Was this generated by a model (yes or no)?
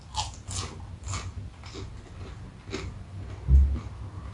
no